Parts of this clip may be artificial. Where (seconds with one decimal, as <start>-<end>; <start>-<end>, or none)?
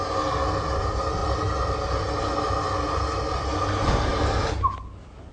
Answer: none